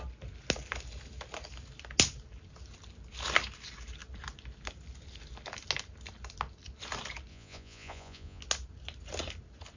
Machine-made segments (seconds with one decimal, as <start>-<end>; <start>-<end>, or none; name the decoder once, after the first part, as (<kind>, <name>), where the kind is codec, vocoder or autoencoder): 7.3-8.4 (vocoder, Vocos)